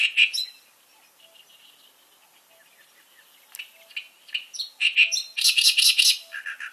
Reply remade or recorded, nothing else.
recorded